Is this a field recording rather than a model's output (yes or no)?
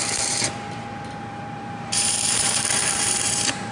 no